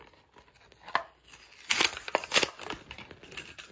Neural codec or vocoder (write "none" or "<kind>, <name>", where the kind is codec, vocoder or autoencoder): none